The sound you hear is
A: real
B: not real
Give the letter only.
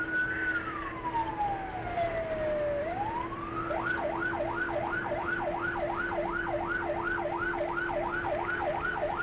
A